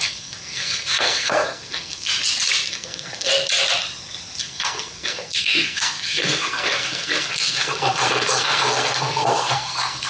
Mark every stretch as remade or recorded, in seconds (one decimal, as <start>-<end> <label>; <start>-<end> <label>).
0.0-2.1 remade; 2.1-2.7 recorded; 2.7-3.3 remade; 3.3-4.4 recorded; 4.4-10.1 remade